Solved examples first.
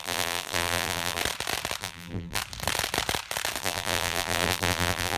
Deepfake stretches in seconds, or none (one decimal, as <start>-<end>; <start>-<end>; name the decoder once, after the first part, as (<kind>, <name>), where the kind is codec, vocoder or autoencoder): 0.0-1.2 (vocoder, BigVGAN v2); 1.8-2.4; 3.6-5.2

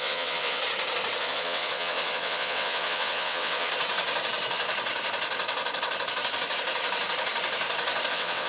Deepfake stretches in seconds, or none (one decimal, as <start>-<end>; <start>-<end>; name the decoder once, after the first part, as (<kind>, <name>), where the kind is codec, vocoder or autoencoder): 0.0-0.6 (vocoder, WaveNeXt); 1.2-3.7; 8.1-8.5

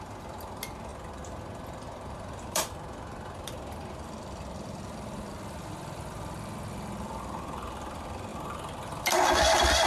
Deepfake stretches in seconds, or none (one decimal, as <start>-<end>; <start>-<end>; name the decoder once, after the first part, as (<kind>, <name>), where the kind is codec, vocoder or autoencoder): 0.0-9.9 (vocoder, BigVGAN v2)